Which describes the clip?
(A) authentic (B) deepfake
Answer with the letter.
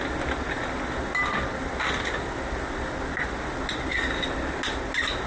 A